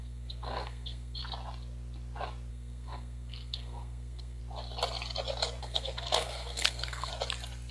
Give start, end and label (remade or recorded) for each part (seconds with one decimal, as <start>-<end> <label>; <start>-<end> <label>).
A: 0.0-1.2 remade; 1.2-2.5 recorded; 2.5-4.4 remade; 4.4-5.6 recorded; 5.6-7.1 remade; 7.1-7.7 recorded